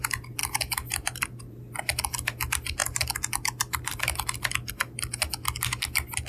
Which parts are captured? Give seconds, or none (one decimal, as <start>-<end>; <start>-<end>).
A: 0.0-0.4; 1.2-6.3